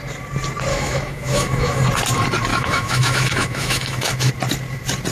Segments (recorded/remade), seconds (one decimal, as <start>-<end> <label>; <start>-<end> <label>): 0.0-0.7 recorded; 0.7-1.8 remade; 1.8-2.5 recorded; 2.5-4.3 remade; 4.3-5.1 recorded